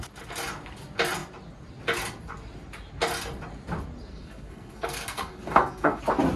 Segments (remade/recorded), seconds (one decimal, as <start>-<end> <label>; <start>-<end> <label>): 0.0-4.1 recorded; 4.1-6.0 remade; 6.0-6.4 recorded